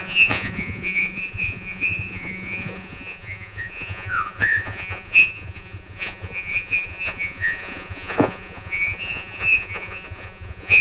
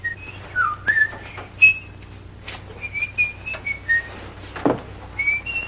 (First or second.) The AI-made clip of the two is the first